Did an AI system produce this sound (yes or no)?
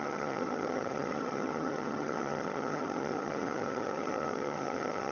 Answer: yes